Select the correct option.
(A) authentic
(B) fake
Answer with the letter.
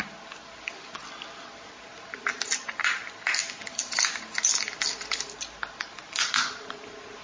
A